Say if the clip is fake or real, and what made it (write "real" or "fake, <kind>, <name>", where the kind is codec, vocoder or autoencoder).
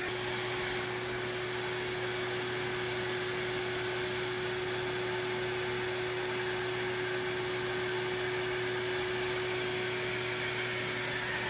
real